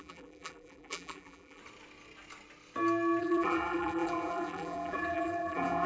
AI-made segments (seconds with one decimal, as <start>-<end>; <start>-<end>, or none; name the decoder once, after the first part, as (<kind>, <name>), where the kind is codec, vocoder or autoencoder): 0.0-1.6 (vocoder, BigVGAN v2); 3.2-5.9